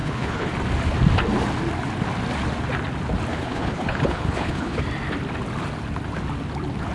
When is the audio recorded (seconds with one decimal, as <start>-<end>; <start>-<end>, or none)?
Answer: 0.5-3.3; 4.8-6.9